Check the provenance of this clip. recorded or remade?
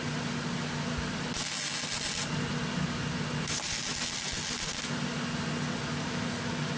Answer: recorded